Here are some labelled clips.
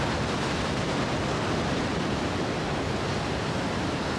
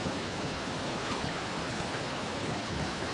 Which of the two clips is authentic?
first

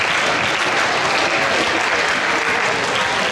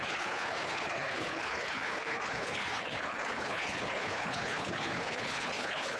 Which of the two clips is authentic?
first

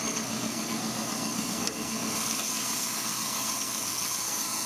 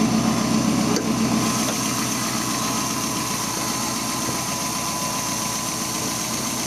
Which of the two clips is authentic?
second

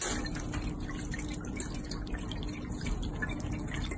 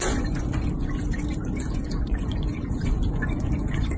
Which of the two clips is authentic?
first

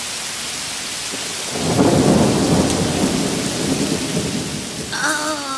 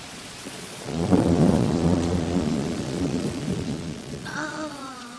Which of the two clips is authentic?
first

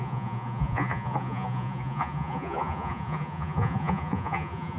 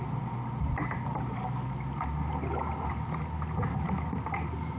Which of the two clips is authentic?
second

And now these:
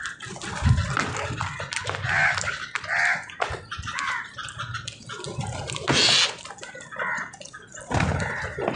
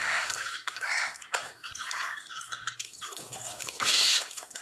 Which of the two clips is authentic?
first